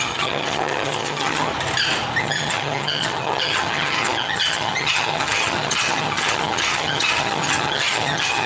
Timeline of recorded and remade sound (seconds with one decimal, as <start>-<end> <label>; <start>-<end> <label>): 0.0-1.5 remade; 1.5-2.2 recorded; 2.2-8.5 remade